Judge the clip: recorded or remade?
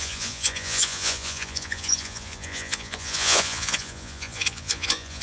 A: remade